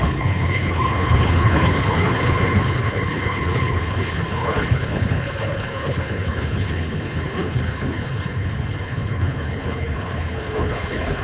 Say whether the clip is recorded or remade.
remade